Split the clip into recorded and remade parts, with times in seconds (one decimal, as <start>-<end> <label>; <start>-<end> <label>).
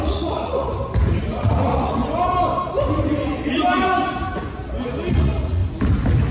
0.0-0.7 remade; 0.7-1.4 recorded; 1.4-2.0 remade; 2.0-5.1 recorded; 5.1-5.6 remade; 5.6-6.3 recorded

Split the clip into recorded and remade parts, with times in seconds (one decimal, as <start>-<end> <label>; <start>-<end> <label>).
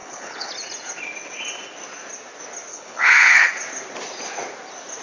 0.0-0.5 remade; 0.5-2.7 recorded; 2.7-3.5 remade; 3.5-5.0 recorded